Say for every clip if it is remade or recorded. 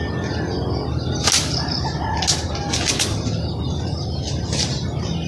recorded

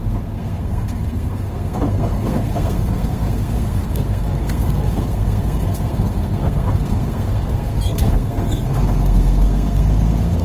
remade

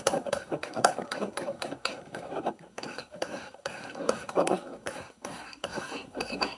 remade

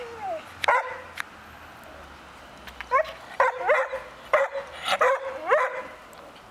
recorded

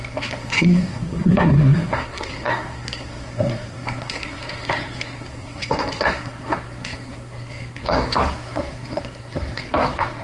remade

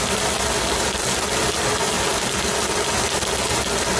recorded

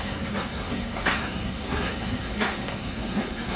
remade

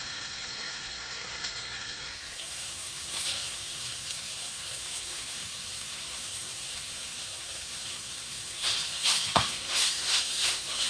remade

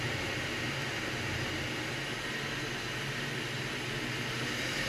recorded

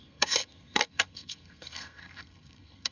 remade